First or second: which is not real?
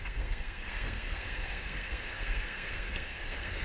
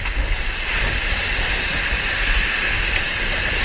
first